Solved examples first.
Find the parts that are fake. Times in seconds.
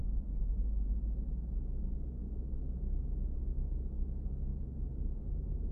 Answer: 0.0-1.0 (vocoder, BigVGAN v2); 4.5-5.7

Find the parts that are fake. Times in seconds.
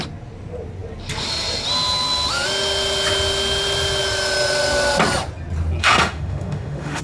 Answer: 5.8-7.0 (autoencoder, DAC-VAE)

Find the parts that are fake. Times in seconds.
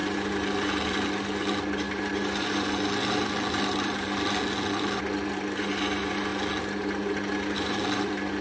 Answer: none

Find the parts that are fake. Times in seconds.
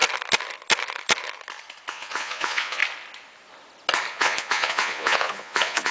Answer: 1.9-2.8 (vocoder, Vocos); 4.1-5.9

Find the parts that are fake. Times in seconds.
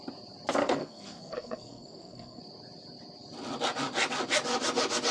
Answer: 0.6-2.4 (codec, SNAC)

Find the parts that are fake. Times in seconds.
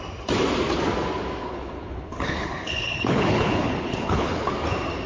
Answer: 1.4-4.5 (codec, HILCodec)